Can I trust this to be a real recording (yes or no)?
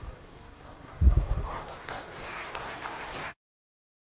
no